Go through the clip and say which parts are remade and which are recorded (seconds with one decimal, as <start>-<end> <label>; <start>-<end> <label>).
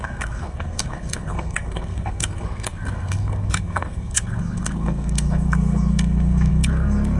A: 0.0-7.2 remade